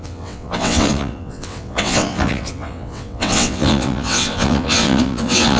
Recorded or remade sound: remade